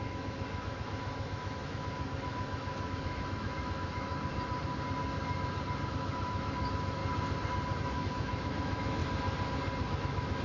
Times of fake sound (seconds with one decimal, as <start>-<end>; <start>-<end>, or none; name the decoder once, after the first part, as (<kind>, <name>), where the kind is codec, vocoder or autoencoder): 0.0-4.1 (autoencoder, DAC-VAE); 5.9-7.0; 7.8-9.0; 10.0-10.4